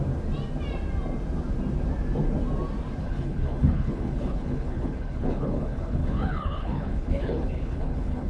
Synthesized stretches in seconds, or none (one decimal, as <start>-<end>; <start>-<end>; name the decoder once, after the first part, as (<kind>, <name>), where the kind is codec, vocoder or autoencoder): 3.0-8.3 (codec, HILCodec)